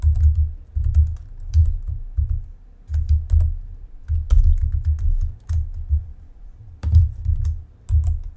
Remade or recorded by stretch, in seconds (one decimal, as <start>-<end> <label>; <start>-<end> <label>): 0.0-6.0 recorded; 6.0-7.6 remade; 7.6-8.4 recorded